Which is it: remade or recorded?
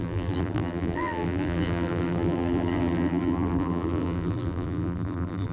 remade